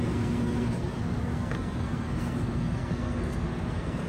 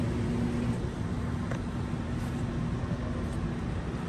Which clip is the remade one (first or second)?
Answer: first